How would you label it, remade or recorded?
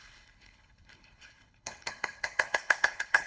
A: remade